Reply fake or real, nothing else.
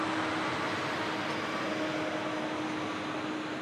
real